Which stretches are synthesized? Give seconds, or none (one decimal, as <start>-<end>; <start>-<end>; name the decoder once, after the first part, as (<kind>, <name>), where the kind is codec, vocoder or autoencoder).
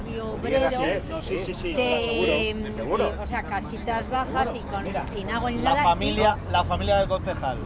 0.6-2.1 (autoencoder, DAC-VAE)